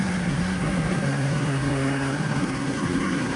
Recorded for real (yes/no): no